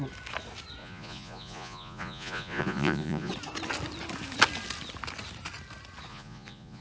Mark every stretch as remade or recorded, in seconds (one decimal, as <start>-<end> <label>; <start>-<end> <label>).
0.0-0.8 recorded; 0.8-3.3 remade; 3.3-6.1 recorded; 6.1-6.8 remade